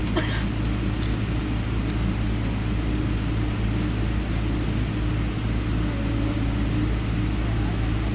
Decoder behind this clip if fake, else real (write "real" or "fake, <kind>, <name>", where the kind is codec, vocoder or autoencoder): real